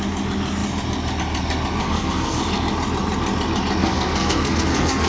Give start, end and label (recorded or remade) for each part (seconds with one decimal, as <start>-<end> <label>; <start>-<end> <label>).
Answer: 0.0-1.8 recorded; 1.8-2.4 remade; 2.4-3.8 recorded; 3.8-5.1 remade

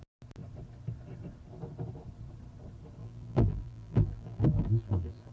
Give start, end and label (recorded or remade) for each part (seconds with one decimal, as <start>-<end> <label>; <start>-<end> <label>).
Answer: 0.0-3.0 recorded; 3.0-5.3 remade

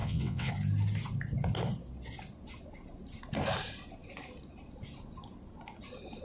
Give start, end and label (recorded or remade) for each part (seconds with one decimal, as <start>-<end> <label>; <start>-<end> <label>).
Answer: 0.0-0.5 remade; 0.5-6.2 recorded